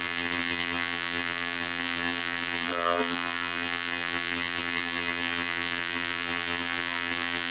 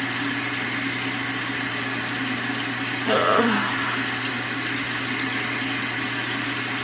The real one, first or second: second